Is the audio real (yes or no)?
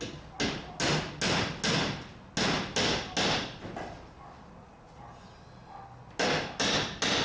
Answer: yes